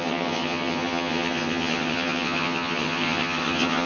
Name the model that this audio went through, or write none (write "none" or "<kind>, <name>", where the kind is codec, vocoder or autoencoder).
vocoder, HiFi-GAN